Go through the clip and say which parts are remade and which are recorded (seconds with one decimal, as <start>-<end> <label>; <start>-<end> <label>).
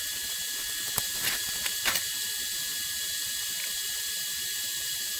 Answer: 0.0-4.2 recorded; 4.2-5.2 remade